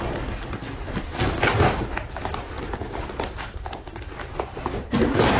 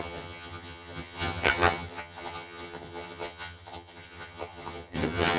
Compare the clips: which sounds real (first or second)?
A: first